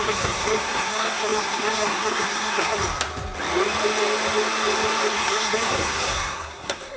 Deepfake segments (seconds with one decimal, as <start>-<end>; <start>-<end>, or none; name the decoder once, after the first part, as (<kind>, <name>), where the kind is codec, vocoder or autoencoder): 0.0-2.8 (codec, SNAC); 5.1-7.0